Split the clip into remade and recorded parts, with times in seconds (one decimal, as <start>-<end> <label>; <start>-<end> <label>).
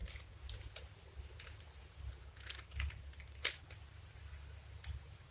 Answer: 0.0-5.3 recorded